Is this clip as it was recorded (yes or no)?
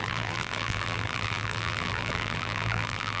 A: no